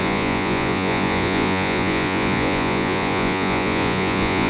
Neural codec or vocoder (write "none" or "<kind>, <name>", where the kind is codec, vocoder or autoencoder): vocoder, Vocos